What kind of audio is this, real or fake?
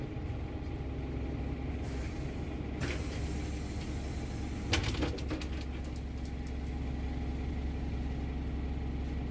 real